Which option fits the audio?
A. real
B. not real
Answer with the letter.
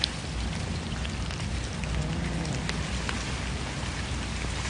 A